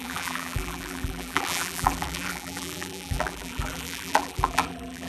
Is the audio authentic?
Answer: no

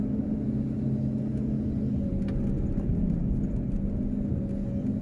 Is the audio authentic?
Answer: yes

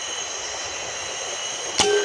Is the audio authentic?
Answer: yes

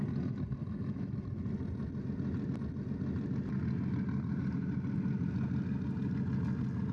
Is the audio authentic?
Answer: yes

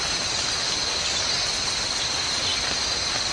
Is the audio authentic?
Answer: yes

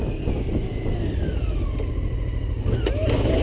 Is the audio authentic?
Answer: yes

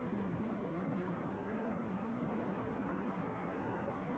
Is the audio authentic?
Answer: no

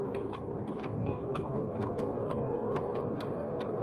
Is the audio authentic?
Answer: no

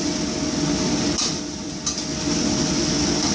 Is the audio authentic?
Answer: yes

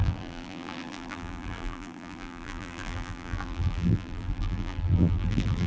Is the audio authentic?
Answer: no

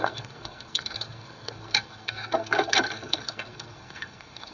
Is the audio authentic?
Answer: no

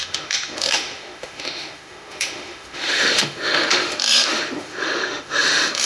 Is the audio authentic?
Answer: no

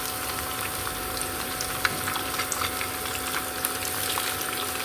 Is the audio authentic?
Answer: yes